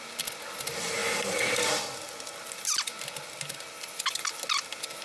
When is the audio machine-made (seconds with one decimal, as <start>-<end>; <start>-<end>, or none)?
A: none